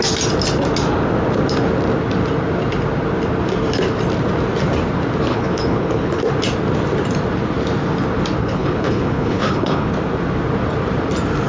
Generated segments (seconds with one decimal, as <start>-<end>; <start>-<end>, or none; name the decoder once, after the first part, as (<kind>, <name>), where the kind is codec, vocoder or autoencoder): 5.3-6.2 (codec, HILCodec); 8.4-9.9